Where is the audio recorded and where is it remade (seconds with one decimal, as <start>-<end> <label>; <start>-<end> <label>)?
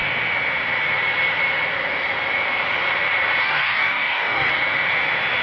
0.0-3.4 recorded; 3.4-4.5 remade; 4.5-5.4 recorded